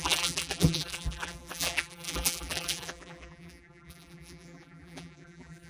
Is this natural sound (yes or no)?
no